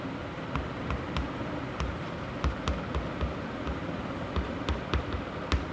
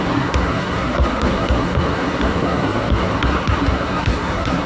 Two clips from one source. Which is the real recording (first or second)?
first